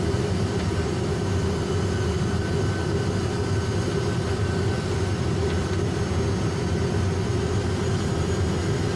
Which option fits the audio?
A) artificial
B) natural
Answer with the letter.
B